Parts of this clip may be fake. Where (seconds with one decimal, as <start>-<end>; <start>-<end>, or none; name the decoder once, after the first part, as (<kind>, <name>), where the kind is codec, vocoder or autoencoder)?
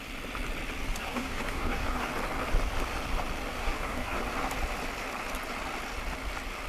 1.0-2.1 (codec, DAC); 3.6-4.2